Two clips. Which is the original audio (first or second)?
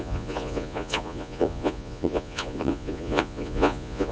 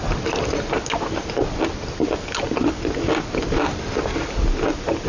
second